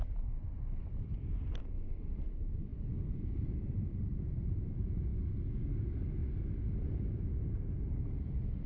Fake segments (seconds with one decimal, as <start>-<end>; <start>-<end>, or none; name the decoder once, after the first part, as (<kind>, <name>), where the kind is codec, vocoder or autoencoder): 0.0-1.1 (vocoder, BigVGAN v2); 1.6-5.1; 5.8-6.2; 6.8-8.7